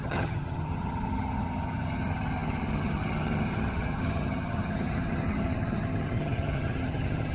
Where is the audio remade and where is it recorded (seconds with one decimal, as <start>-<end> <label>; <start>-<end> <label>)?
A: 0.0-7.3 remade